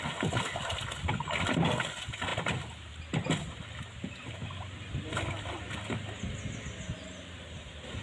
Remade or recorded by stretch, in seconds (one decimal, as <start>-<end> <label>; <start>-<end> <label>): 0.0-8.0 recorded